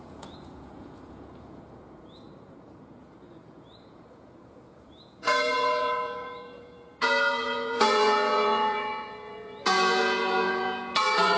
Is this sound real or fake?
fake